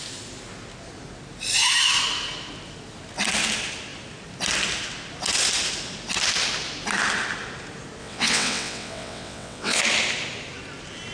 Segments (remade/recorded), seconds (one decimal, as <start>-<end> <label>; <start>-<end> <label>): 0.0-8.0 recorded; 8.0-9.8 remade; 9.8-11.1 recorded